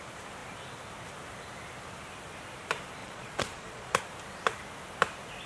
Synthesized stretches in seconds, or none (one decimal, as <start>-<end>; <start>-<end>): 3.0-4.0